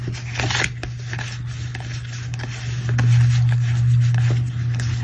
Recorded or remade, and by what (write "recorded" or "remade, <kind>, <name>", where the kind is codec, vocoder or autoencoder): recorded